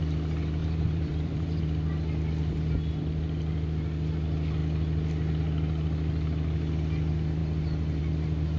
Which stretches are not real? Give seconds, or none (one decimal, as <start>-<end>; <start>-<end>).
0.6-1.6